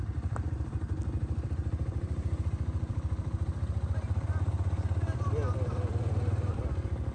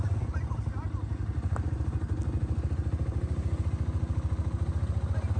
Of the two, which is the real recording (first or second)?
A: second